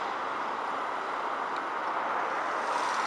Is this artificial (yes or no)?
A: no